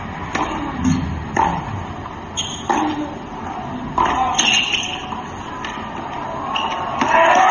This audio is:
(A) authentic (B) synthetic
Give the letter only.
A